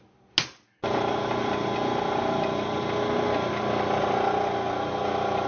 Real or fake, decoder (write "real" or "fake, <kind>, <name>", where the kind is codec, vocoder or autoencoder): real